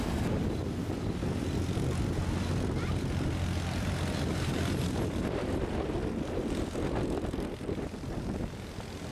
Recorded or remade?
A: recorded